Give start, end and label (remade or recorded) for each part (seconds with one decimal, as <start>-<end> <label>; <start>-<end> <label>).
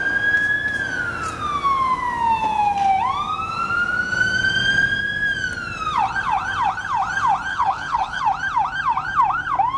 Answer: 0.0-7.5 recorded; 7.5-8.2 remade; 8.2-9.8 recorded